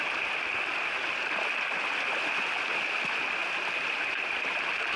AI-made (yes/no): no